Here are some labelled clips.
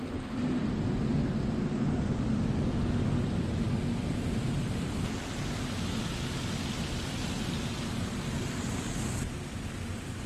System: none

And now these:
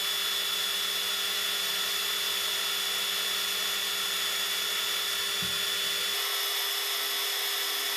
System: none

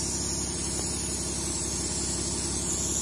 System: none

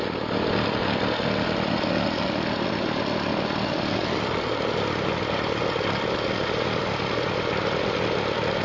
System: none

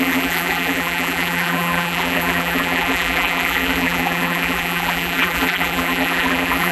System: vocoder, BigVGAN v2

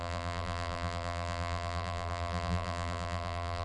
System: vocoder, BigVGAN v2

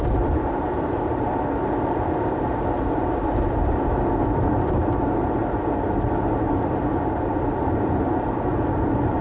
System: vocoder, BigVGAN v2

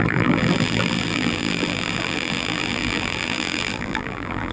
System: vocoder, BigVGAN v2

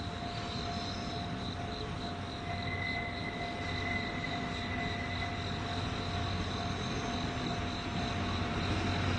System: none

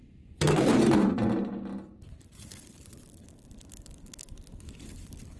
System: none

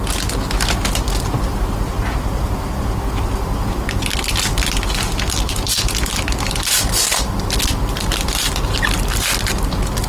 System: none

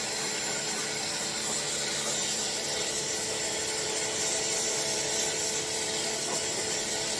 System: vocoder, BigVGAN v2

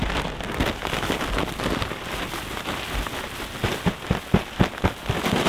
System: none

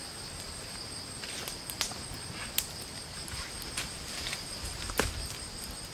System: none